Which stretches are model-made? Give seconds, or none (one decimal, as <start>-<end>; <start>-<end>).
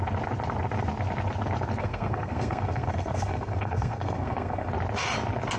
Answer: 1.8-4.7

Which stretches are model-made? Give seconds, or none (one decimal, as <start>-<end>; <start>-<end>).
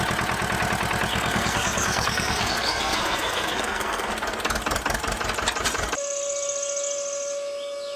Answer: 1.1-4.1